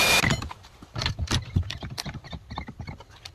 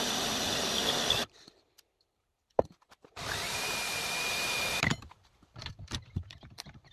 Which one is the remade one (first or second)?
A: second